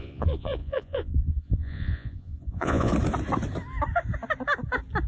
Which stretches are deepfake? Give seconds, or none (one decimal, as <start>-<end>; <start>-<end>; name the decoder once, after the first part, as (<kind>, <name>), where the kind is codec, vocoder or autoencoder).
0.0-2.9 (vocoder, Vocos)